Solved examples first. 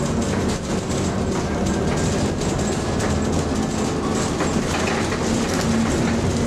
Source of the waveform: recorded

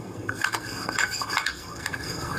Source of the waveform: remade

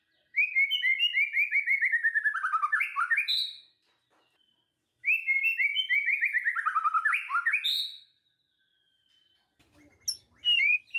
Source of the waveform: recorded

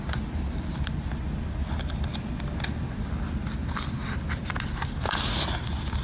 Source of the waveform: recorded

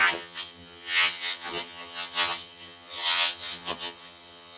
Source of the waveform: remade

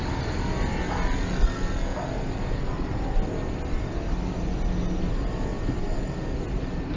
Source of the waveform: recorded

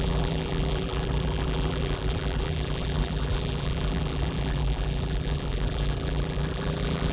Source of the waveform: remade